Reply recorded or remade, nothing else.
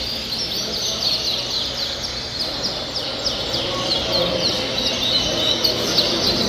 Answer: recorded